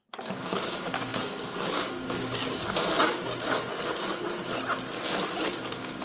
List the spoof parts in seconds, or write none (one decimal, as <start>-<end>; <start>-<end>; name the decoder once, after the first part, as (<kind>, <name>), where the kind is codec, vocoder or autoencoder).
0.0-2.4 (codec, DAC); 5.5-6.0